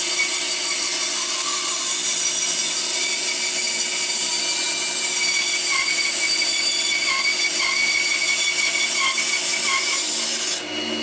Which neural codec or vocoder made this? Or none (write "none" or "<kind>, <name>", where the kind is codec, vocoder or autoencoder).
none